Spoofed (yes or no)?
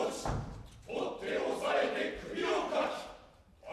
no